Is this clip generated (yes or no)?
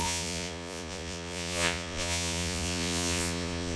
yes